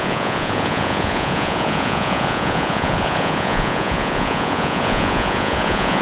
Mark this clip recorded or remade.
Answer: remade